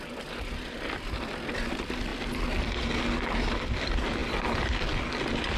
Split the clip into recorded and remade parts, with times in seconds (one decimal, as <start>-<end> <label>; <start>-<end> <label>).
0.0-2.1 recorded; 2.1-2.9 remade; 2.9-5.6 recorded